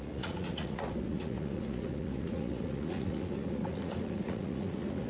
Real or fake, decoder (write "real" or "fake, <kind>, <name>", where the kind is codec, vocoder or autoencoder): fake, vocoder, Vocos